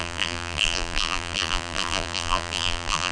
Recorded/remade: remade